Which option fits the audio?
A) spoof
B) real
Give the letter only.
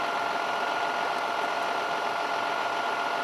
B